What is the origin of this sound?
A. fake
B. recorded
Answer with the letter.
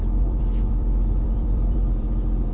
A